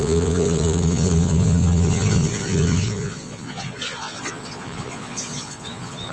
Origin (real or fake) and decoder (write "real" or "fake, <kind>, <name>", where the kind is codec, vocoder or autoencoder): fake, vocoder, Vocos